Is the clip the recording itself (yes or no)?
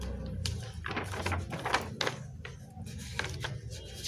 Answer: yes